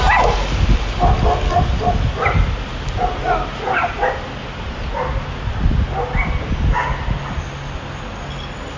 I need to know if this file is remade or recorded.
recorded